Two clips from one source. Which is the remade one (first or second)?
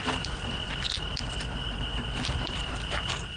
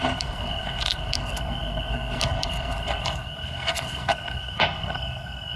second